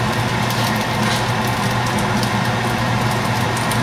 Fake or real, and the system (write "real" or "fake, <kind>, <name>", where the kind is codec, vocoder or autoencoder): real